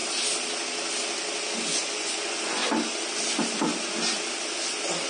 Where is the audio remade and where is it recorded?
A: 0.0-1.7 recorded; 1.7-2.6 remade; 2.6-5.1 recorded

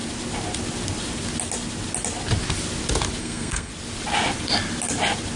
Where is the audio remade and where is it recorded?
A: 0.0-3.2 recorded; 3.2-3.7 remade; 3.7-5.4 recorded

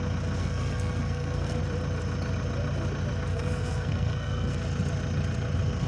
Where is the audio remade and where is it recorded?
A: 0.0-0.4 recorded; 0.4-1.6 remade; 1.6-3.3 recorded; 3.3-4.6 remade; 4.6-5.9 recorded

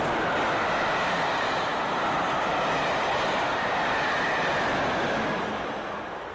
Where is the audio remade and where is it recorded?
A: 0.0-6.3 recorded

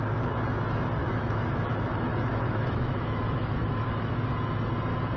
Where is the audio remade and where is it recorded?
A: 0.0-1.0 recorded; 1.0-4.1 remade; 4.1-5.2 recorded

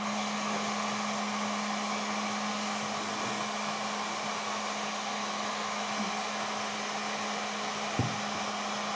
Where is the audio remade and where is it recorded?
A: 0.0-5.2 recorded; 5.2-6.1 remade; 6.1-9.0 recorded